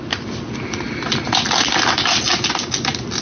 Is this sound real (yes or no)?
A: yes